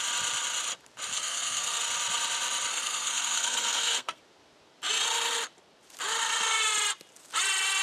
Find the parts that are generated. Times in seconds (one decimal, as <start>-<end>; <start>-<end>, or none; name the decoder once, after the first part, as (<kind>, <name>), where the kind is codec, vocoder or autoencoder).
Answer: 1.1-1.8 (codec, SNAC); 2.7-4.2